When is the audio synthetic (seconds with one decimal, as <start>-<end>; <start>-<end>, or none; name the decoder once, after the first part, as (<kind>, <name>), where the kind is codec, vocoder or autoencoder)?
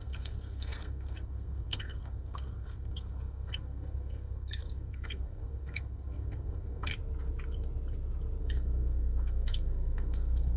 0.0-6.9 (codec, SNAC); 8.4-10.6